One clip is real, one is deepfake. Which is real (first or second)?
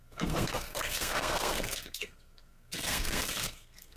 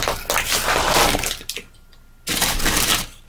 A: second